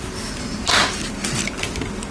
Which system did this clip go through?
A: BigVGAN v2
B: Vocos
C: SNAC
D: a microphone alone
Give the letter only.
D